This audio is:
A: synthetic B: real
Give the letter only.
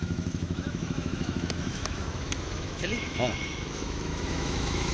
A